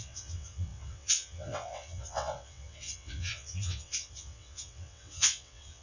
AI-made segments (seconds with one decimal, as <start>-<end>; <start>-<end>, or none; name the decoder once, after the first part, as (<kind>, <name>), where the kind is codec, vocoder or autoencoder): 0.0-5.8 (vocoder, WaveNeXt)